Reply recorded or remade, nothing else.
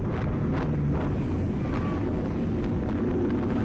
recorded